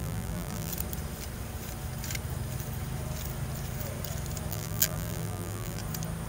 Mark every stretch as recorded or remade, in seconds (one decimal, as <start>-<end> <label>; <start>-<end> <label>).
0.0-0.7 remade; 0.7-4.5 recorded; 4.5-5.8 remade; 5.8-6.3 recorded